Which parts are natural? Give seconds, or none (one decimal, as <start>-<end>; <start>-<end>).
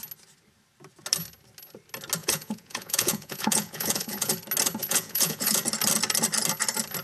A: 0.0-2.2; 4.3-4.8; 5.6-7.0